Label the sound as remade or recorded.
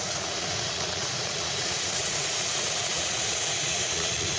remade